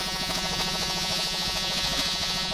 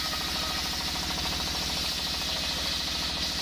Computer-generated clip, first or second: first